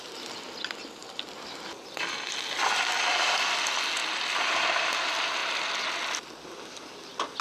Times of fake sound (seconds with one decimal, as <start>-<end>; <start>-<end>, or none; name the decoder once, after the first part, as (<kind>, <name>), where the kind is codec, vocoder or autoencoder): none